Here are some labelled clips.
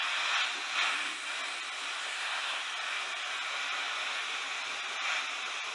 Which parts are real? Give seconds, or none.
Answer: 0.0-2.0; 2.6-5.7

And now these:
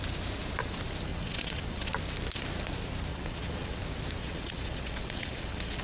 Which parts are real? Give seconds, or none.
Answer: 0.0-1.1; 1.9-3.1; 3.8-4.2

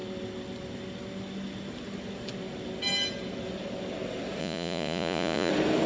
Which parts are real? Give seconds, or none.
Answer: 0.0-4.4; 5.5-5.9

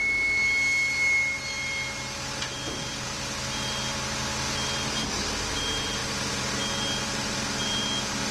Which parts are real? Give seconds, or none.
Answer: 0.0-8.3

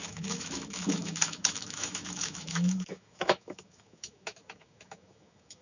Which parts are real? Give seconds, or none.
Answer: none